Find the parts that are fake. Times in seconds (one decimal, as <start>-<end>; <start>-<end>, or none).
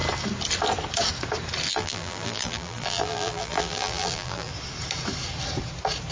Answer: 1.7-4.5